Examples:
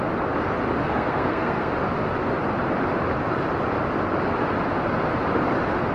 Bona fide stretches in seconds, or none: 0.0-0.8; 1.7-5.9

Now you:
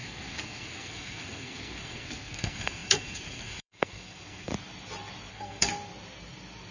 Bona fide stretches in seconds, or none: 4.5-5.3; 5.7-6.7

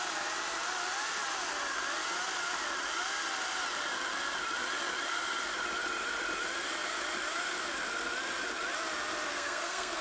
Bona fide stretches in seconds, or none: 0.0-9.3

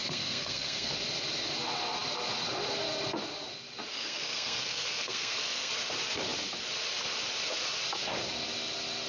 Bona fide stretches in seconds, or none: 0.9-3.9; 5.7-9.1

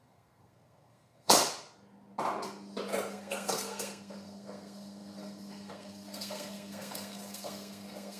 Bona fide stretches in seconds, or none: 1.4-3.1

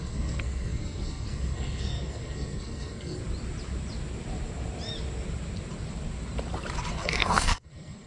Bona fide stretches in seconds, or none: 3.2-6.9

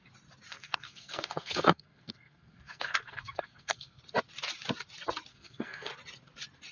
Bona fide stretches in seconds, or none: 0.0-0.5; 4.0-5.3; 5.9-6.7